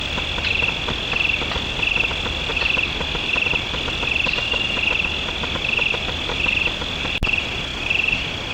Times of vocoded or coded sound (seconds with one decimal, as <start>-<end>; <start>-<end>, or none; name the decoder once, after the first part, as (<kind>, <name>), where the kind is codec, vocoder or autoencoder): none